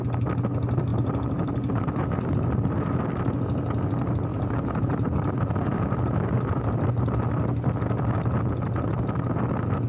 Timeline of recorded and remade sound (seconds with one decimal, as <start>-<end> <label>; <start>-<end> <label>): 0.0-0.9 recorded; 0.9-2.3 remade; 2.3-4.3 recorded; 4.3-6.6 remade; 6.6-9.9 recorded